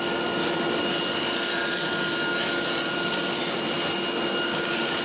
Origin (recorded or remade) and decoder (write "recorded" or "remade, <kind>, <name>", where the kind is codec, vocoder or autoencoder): recorded